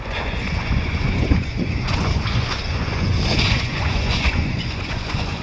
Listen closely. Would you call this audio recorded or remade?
remade